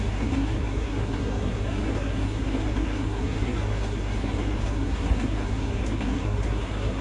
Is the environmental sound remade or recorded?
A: remade